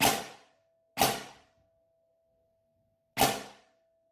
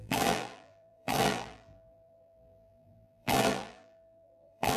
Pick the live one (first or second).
first